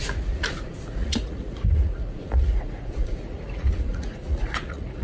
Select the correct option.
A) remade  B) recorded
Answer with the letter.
A